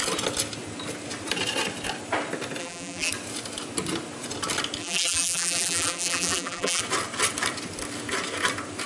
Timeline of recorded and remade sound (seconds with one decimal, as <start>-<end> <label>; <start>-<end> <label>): 0.0-2.6 recorded; 2.6-3.1 remade; 3.1-4.8 recorded; 4.8-6.8 remade; 6.8-8.9 recorded